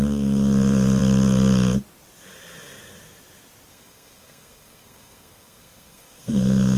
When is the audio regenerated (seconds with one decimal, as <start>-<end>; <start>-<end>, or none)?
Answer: 3.7-6.8